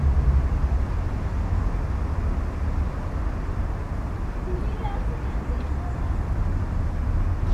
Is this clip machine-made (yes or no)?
no